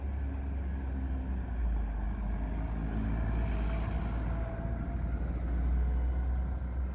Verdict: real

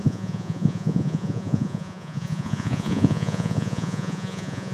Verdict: fake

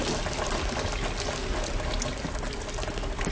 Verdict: real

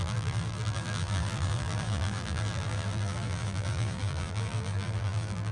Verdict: fake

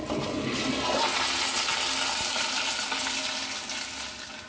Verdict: real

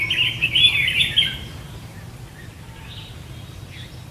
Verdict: fake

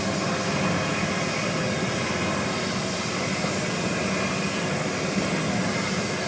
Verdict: real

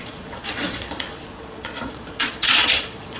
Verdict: fake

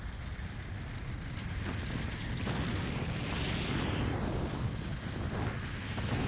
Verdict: real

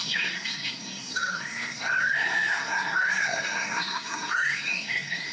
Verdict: fake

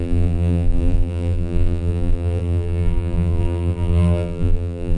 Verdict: fake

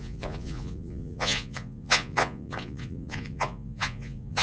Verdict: fake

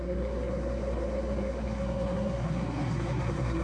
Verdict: fake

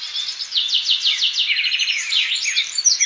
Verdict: real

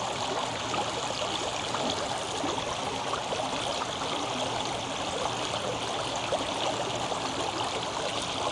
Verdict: real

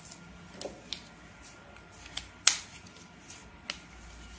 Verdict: real